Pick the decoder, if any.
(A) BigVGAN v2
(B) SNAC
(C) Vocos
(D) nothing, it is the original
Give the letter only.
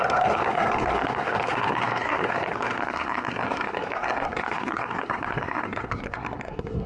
B